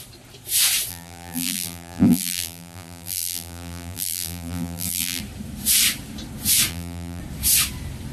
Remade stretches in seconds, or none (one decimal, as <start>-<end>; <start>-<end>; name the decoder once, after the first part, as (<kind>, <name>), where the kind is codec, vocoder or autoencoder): 0.9-5.2 (vocoder, BigVGAN v2); 6.7-7.2